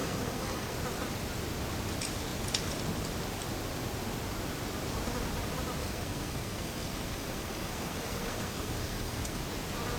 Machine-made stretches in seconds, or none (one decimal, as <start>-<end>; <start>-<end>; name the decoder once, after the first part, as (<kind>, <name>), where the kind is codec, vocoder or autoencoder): 0.0-0.8 (codec, SNAC); 5.8-9.4